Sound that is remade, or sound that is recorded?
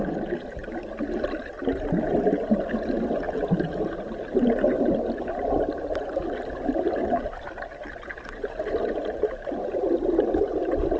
recorded